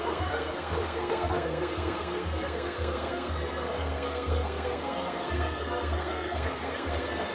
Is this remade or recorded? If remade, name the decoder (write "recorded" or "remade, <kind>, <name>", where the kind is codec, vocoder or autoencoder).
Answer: remade, codec, SNAC